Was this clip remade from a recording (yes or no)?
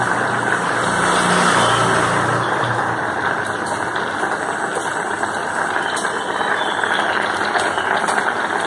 no